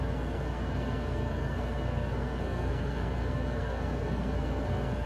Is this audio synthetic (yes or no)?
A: yes